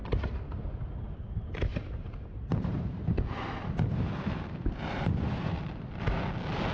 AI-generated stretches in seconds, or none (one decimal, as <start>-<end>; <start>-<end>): 0.0-0.8; 1.7-5.5